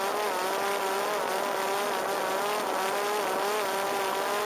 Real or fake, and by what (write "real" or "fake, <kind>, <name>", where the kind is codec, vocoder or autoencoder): real